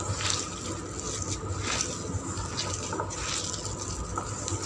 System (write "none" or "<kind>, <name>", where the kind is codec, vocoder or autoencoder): none